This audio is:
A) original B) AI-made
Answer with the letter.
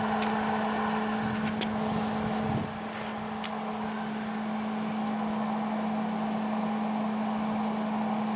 A